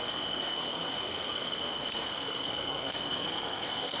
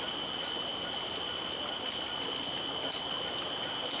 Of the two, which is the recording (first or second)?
second